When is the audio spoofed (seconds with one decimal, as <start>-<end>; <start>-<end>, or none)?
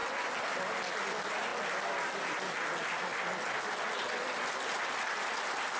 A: none